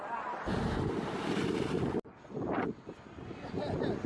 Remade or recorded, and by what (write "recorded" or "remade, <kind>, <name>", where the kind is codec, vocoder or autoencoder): recorded